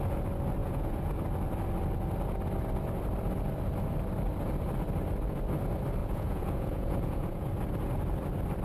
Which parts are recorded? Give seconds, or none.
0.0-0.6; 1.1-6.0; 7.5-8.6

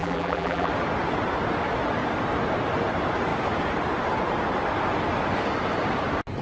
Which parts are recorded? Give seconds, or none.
0.7-6.4

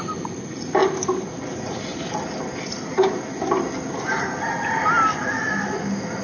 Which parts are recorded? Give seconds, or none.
0.0-6.2

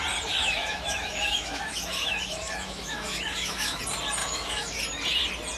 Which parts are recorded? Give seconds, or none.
0.0-0.4; 3.8-4.2; 4.8-5.6

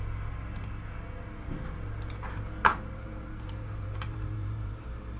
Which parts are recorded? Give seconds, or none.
0.0-2.7